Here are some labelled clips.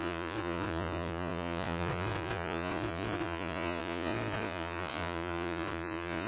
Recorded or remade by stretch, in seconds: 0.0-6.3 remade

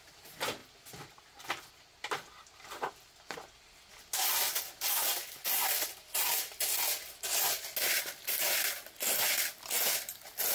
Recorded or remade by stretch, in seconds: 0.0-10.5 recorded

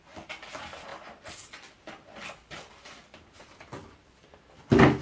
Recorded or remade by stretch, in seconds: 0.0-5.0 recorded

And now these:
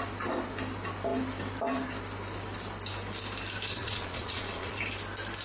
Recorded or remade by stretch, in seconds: 0.0-3.8 recorded; 3.8-4.8 remade; 4.8-5.4 recorded

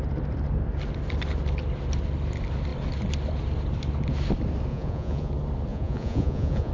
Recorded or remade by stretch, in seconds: 0.0-4.7 recorded; 4.7-5.3 remade; 5.3-5.7 recorded; 5.7-6.7 remade